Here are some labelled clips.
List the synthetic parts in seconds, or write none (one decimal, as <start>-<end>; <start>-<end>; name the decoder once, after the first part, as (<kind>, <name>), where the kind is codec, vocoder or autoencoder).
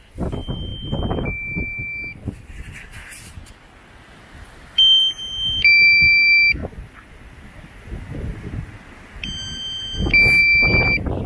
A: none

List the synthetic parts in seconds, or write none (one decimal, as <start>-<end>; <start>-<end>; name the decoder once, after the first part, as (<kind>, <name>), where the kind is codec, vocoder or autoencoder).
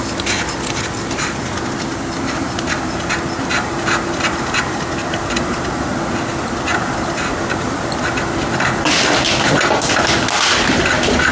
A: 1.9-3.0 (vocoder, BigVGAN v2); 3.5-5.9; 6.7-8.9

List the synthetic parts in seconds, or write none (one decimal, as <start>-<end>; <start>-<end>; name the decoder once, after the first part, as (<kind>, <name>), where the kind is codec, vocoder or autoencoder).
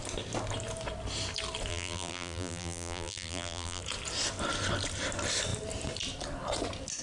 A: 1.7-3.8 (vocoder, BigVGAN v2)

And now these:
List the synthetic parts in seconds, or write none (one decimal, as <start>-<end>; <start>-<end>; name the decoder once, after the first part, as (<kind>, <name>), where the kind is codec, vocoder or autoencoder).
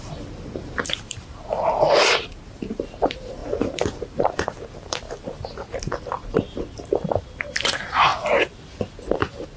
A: 0.0-8.1 (vocoder, BigVGAN v2)